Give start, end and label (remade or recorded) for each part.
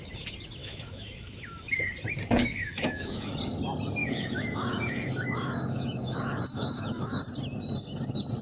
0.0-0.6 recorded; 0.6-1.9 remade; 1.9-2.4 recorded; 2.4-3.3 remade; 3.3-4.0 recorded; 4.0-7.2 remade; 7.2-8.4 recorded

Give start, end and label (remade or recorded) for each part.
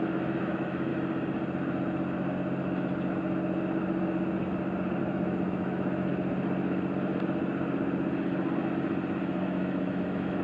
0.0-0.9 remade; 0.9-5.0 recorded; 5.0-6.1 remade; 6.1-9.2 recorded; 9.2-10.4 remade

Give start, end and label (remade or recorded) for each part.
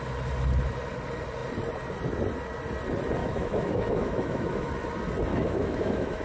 0.0-3.2 recorded; 3.2-4.7 remade; 4.7-5.3 recorded; 5.3-6.2 remade